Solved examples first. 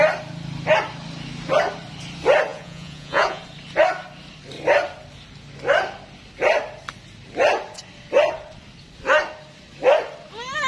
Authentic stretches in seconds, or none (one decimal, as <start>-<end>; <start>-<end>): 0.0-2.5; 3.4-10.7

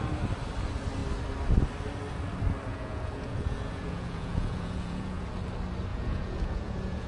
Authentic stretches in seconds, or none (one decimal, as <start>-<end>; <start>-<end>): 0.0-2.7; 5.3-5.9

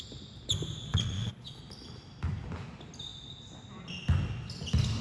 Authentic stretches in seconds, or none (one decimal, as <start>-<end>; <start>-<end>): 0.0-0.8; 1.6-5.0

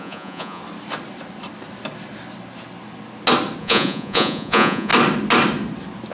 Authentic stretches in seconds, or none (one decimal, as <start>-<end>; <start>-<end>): 0.6-3.6; 4.9-6.1